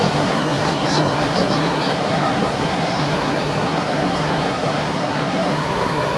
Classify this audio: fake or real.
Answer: fake